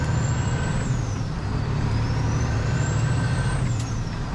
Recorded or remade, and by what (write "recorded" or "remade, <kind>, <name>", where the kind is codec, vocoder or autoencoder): remade, vocoder, BigVGAN v2